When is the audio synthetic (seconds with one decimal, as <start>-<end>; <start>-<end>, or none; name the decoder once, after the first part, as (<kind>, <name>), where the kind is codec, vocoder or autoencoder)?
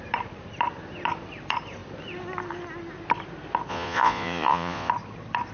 3.7-4.9 (vocoder, Vocos)